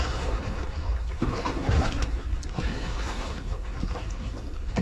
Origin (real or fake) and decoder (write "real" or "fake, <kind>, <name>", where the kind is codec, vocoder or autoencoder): fake, codec, SNAC